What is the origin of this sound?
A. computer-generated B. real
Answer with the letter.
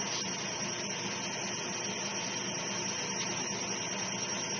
B